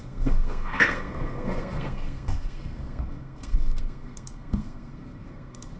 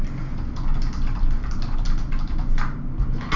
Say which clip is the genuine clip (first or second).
second